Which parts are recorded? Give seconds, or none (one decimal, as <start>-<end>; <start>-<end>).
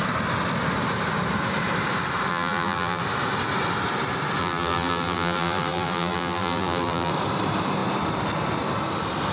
0.0-2.3; 3.0-4.4; 7.1-9.3